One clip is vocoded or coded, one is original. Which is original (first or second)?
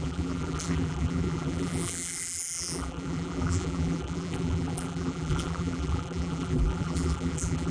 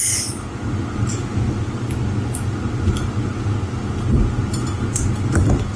second